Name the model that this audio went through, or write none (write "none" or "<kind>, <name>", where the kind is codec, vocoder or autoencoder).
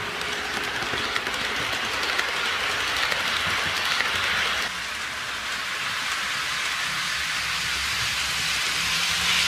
none